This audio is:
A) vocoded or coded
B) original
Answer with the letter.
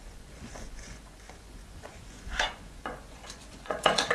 A